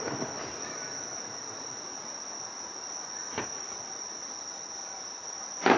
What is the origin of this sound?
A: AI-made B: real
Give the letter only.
B